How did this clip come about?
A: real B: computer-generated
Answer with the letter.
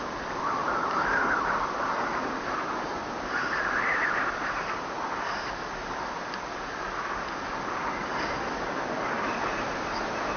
A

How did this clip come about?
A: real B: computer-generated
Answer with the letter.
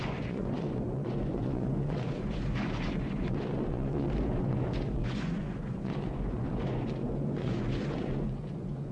B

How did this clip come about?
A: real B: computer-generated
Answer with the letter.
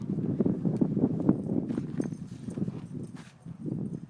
A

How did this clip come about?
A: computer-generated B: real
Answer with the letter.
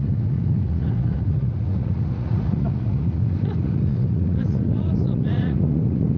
A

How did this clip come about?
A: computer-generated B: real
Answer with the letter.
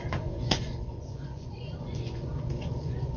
A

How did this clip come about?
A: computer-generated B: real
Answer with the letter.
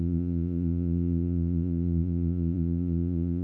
A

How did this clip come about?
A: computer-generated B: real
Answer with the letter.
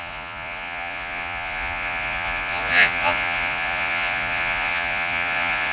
A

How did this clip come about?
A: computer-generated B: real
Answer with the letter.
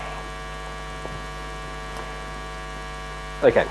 B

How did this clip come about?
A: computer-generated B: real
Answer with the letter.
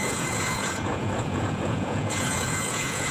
A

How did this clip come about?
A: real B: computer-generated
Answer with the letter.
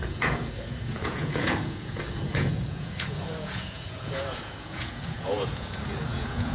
B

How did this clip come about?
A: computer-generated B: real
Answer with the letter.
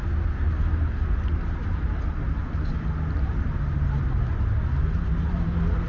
B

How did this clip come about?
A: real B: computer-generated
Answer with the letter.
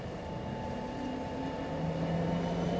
A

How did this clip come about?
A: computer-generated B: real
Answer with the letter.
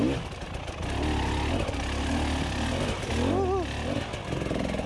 B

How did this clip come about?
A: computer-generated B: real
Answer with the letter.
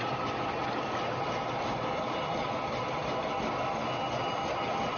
B